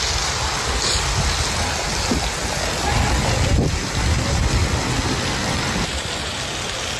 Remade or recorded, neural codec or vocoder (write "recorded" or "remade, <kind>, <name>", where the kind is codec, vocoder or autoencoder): recorded